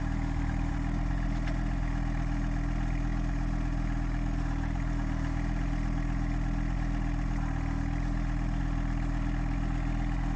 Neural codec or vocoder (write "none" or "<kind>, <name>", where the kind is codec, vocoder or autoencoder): none